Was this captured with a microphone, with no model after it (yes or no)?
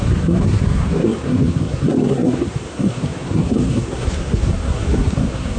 no